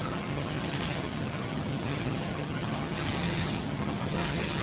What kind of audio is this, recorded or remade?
remade